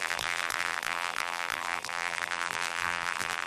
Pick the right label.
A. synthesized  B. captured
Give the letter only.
A